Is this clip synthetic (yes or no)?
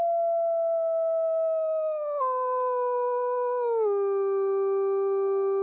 no